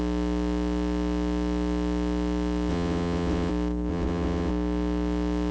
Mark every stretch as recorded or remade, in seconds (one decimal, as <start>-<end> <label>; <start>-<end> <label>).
0.0-2.7 recorded; 2.7-3.5 remade; 3.5-3.9 recorded; 3.9-4.5 remade; 4.5-5.5 recorded